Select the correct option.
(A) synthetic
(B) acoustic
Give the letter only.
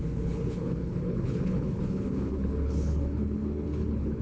A